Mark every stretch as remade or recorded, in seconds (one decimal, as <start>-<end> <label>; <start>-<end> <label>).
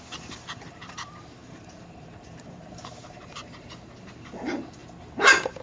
0.0-5.6 remade